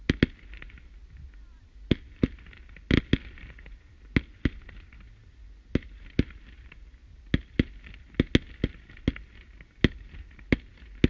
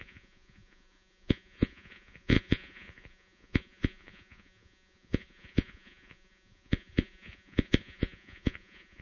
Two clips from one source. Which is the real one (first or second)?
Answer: first